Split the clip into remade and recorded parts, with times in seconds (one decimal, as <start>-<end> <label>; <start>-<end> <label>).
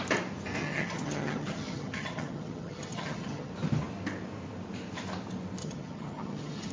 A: 0.0-0.6 recorded; 0.6-3.5 remade; 3.5-5.6 recorded; 5.6-6.7 remade